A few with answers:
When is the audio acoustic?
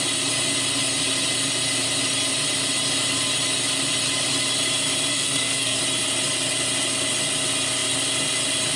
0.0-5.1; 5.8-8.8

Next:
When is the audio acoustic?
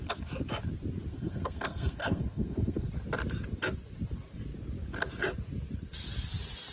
0.0-1.1; 2.9-6.7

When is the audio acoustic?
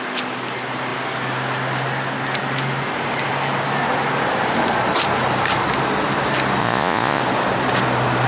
0.0-6.6; 7.2-8.3